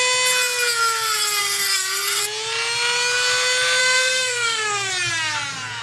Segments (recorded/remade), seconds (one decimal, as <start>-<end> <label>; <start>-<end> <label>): 0.0-1.4 recorded; 1.4-2.2 remade; 2.2-3.8 recorded; 3.8-4.9 remade; 4.9-5.8 recorded